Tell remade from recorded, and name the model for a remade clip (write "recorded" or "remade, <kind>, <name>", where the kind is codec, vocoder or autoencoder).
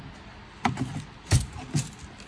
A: recorded